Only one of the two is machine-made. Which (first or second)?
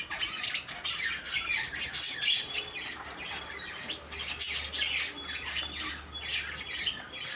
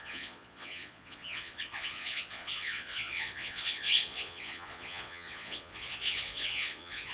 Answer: second